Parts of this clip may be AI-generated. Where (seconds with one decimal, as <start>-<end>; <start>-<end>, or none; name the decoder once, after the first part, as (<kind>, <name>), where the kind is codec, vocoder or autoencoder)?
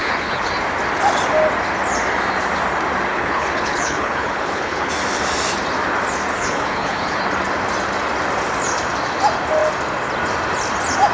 0.0-0.5 (codec, HILCodec); 3.1-4.9; 6.3-7.2